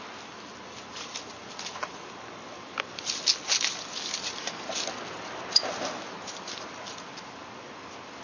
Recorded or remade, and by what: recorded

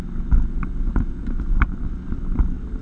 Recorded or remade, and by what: recorded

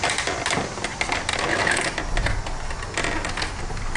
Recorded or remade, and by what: recorded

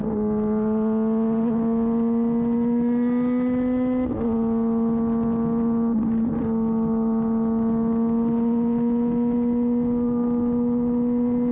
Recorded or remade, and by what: recorded